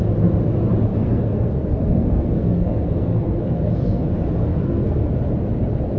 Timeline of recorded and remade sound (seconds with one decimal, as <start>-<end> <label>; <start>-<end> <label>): 0.0-0.9 recorded; 0.9-4.1 remade; 4.1-4.5 recorded; 4.5-5.0 remade; 5.0-6.0 recorded